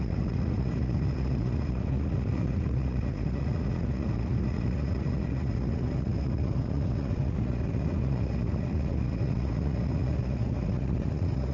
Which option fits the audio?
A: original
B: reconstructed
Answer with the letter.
B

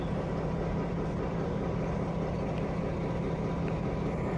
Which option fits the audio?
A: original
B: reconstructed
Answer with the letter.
A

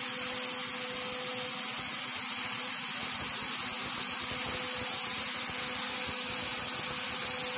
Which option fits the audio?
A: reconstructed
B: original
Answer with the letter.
B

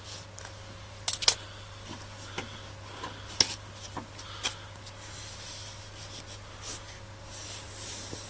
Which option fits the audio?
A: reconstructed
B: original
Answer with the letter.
B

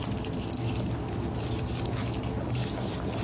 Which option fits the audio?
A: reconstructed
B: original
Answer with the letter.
B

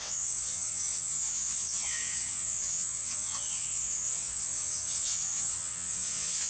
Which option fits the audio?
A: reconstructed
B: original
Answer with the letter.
A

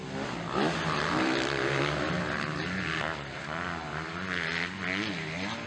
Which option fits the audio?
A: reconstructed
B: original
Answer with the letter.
B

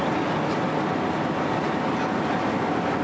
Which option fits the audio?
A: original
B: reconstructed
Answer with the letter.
A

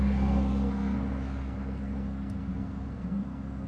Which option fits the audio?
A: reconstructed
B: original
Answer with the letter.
A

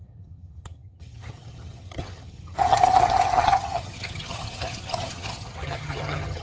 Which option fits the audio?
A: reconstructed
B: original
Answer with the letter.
A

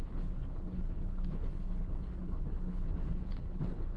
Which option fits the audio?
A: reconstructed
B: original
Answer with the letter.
A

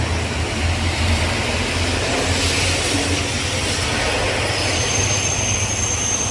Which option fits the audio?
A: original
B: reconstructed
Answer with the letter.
A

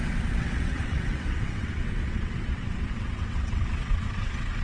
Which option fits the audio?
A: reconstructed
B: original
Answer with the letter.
A